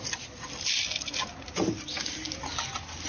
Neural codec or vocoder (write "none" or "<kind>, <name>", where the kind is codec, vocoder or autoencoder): none